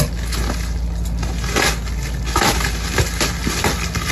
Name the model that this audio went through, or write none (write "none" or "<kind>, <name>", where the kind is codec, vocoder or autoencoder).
none